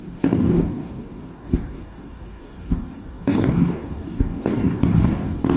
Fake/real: fake